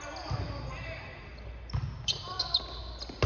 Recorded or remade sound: recorded